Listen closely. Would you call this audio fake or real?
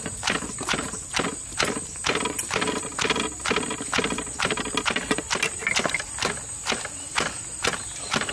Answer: real